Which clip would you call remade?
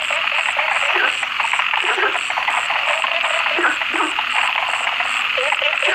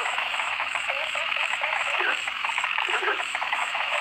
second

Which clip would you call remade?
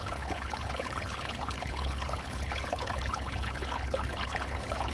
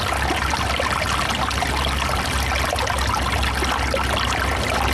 first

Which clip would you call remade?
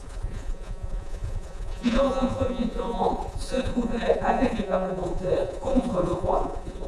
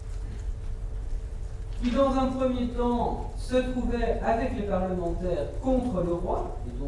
first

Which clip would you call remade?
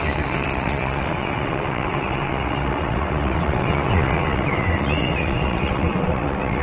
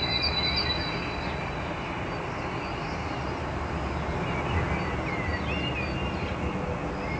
first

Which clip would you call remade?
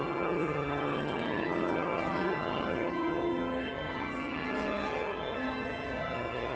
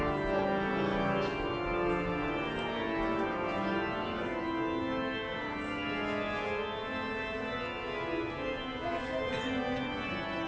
first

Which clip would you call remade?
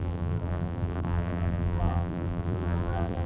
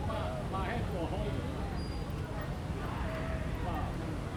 first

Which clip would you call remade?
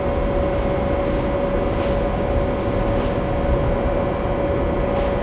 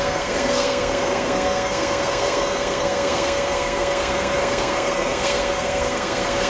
second